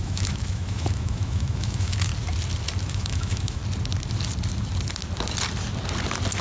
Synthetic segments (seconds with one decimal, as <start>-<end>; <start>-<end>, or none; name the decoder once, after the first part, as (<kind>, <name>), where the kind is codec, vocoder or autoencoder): 0.0-2.1 (autoencoder, DAC-VAE); 2.8-3.6